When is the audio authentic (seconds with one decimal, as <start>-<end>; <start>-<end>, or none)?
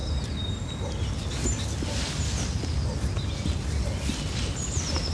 0.0-5.1